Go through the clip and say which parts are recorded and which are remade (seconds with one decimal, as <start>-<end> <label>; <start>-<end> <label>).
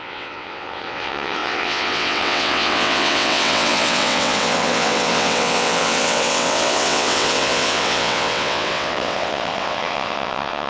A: 0.0-10.7 remade